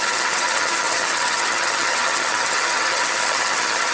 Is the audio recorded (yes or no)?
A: no